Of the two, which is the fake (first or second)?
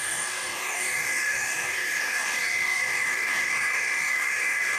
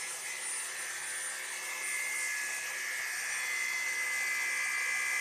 first